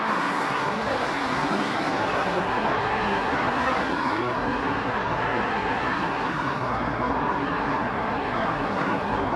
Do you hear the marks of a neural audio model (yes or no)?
yes